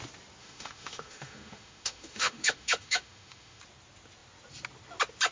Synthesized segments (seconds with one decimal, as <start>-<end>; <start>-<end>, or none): 0.4-3.6